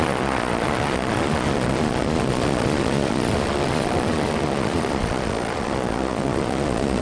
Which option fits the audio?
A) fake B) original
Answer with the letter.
A